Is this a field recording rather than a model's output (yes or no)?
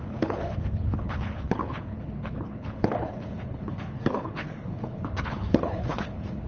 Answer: no